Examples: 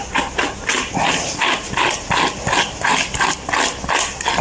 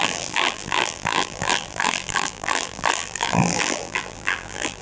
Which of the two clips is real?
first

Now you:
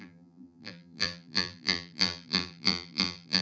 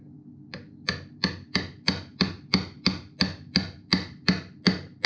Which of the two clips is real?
second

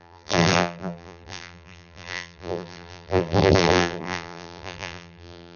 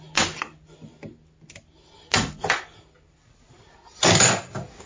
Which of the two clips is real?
second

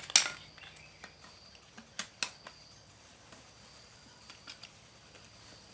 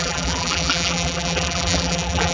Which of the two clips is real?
first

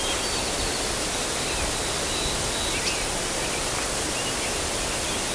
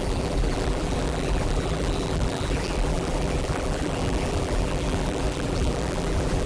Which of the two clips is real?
first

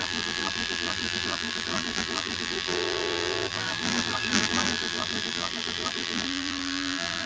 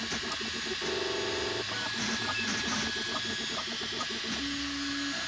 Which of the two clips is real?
second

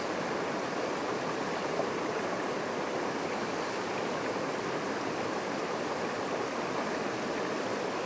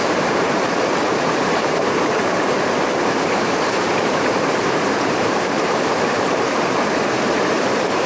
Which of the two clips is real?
first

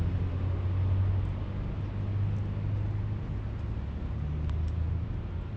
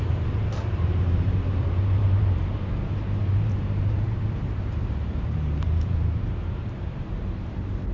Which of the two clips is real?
first